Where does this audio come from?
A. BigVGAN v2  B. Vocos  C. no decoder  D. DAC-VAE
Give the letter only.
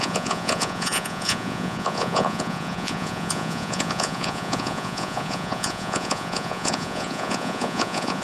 B